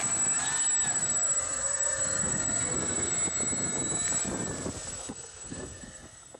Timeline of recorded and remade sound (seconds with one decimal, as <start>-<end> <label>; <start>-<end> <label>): 0.0-1.4 recorded; 1.4-3.1 remade; 3.1-5.0 recorded; 5.0-6.4 remade